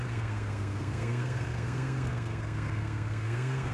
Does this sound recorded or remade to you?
remade